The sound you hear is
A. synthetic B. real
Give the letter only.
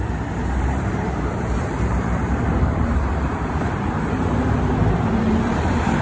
A